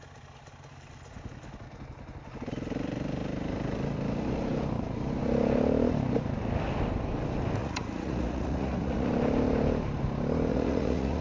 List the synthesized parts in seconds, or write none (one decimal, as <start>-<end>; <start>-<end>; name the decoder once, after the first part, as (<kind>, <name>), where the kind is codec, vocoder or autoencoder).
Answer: 7.6-9.1 (vocoder, Vocos); 10.5-11.2